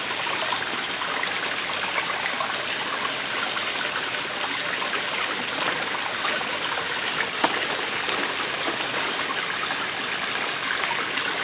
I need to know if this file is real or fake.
real